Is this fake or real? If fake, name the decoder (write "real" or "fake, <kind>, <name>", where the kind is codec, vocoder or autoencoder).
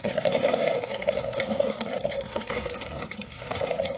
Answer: fake, codec, SNAC